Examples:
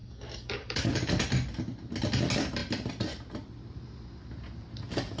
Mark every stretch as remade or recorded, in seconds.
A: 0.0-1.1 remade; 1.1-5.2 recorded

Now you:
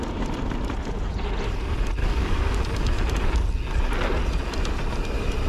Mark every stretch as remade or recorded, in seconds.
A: 0.0-2.0 recorded; 2.0-2.6 remade; 2.6-5.5 recorded

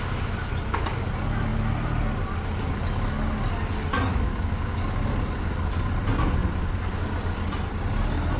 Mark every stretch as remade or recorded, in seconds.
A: 0.0-4.3 recorded; 4.3-4.8 remade; 4.8-8.4 recorded

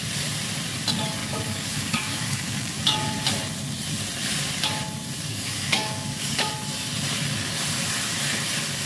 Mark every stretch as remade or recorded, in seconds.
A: 0.0-1.2 recorded; 1.2-3.1 remade; 3.1-5.3 recorded; 5.3-6.5 remade; 6.5-8.9 recorded

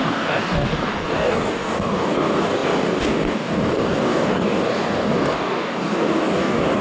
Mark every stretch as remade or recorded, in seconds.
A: 0.0-6.8 remade

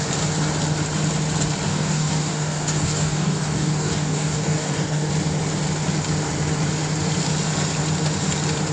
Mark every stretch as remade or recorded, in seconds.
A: 0.0-1.7 recorded; 1.7-5.1 remade; 5.1-8.7 recorded